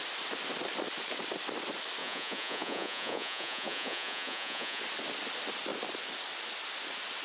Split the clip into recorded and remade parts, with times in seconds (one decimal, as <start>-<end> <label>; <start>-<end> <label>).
0.0-2.0 recorded; 2.0-4.8 remade; 4.8-7.2 recorded